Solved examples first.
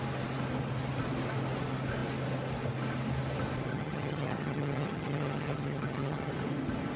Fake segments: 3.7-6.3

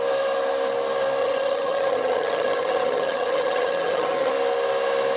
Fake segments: 1.2-4.3

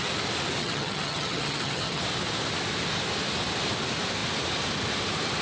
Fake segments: 0.6-2.0

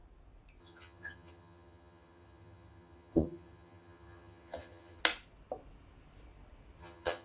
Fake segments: 0.6-5.0; 6.8-7.2

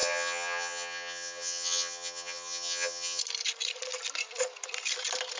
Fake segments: 0.0-3.2

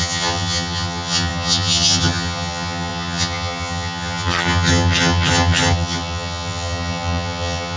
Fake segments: 0.0-7.8